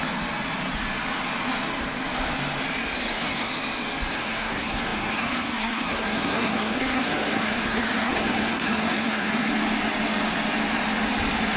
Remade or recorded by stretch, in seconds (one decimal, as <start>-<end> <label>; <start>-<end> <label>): 0.0-3.0 recorded; 3.0-3.5 remade; 3.5-4.1 recorded; 4.1-9.5 remade; 9.5-11.6 recorded